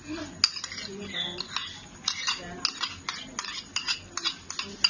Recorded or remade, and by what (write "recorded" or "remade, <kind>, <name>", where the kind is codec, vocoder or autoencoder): recorded